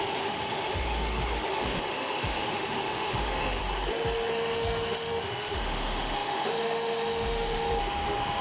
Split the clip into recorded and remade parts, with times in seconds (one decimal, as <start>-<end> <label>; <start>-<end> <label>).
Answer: 0.0-3.6 remade; 3.6-4.3 recorded; 4.3-8.4 remade